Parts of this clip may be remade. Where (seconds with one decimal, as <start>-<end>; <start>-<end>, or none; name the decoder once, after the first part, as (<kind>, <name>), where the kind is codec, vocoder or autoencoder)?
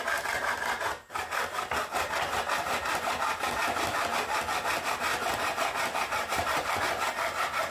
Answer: 5.1-6.8 (vocoder, BigVGAN v2)